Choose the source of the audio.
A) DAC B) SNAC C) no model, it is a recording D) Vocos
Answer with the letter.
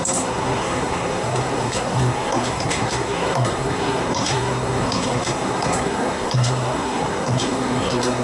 B